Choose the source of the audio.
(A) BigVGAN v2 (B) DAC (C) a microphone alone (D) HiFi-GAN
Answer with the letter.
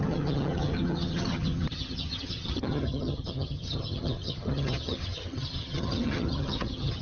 D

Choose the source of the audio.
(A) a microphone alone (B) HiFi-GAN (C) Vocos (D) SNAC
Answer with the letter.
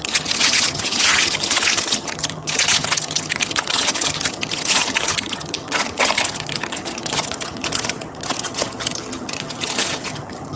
B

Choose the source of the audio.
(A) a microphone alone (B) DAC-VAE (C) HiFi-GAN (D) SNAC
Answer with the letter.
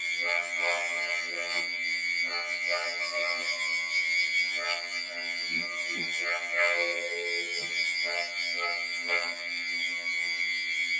C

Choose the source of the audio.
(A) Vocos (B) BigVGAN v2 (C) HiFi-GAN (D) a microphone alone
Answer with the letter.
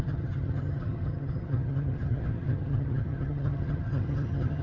C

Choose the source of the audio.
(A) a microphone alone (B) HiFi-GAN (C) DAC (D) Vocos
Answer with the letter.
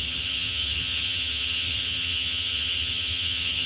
B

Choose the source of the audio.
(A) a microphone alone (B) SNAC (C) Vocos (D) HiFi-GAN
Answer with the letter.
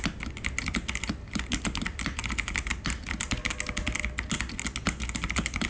A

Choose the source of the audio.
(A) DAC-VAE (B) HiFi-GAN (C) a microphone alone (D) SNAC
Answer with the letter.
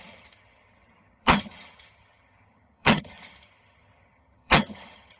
B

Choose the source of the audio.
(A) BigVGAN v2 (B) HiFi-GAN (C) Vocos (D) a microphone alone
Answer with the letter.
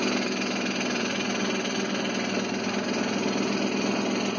D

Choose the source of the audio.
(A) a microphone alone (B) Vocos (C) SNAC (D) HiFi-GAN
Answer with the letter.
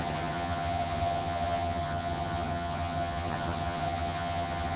D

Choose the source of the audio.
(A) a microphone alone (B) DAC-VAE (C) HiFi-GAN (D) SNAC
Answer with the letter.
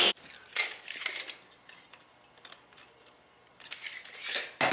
A